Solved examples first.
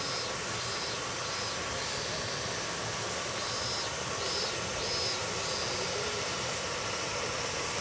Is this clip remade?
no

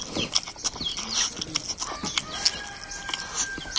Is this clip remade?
no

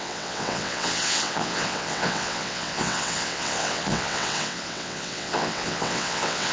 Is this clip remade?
yes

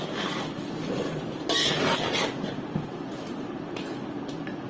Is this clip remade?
no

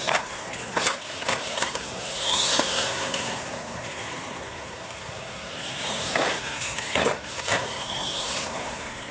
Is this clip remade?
yes